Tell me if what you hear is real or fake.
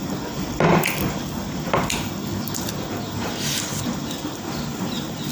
fake